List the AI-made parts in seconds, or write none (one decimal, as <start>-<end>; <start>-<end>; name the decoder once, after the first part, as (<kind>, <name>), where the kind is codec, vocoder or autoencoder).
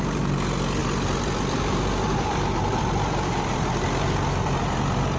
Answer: 0.8-3.3 (vocoder, BigVGAN v2)